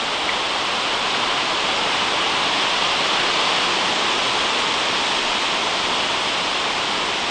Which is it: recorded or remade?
recorded